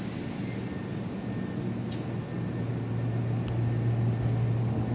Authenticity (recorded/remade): recorded